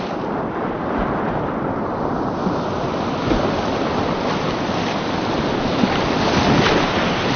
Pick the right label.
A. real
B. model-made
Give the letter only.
A